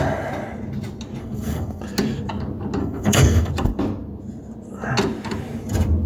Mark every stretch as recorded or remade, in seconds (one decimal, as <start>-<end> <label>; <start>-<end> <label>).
0.0-1.2 recorded; 1.2-1.8 remade; 1.8-2.8 recorded; 2.8-3.5 remade; 3.5-6.1 recorded